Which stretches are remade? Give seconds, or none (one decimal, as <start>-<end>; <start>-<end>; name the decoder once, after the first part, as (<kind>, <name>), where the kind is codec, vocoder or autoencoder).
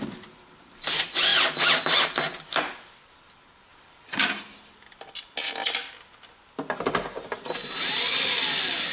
none